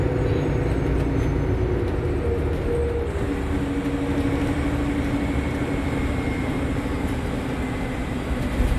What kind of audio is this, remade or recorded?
recorded